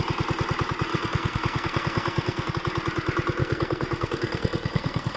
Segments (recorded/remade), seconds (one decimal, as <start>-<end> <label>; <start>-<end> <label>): 0.0-0.9 recorded; 0.9-2.5 remade; 2.5-3.4 recorded; 3.4-5.2 remade